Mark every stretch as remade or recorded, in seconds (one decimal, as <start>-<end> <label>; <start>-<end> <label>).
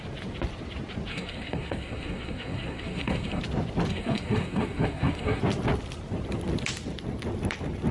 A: 0.0-1.1 recorded; 1.1-3.4 remade; 3.4-3.9 recorded; 3.9-5.4 remade; 5.4-7.9 recorded